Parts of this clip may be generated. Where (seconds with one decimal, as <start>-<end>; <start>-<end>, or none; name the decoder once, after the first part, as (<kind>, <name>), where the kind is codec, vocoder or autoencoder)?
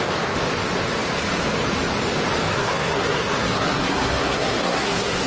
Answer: 2.5-5.3 (codec, SNAC)